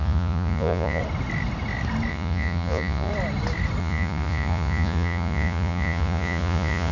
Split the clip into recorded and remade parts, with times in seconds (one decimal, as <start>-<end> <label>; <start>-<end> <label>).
0.0-1.0 remade; 1.0-2.1 recorded; 2.1-3.1 remade; 3.1-3.8 recorded; 3.8-6.9 remade